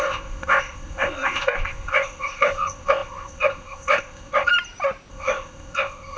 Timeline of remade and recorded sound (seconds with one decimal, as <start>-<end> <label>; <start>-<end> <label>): 0.0-4.5 remade; 4.5-5.1 recorded; 5.1-6.2 remade